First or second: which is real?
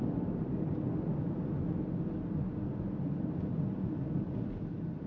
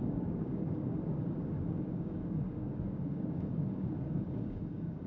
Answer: first